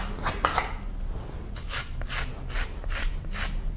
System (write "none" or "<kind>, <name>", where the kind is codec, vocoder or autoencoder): none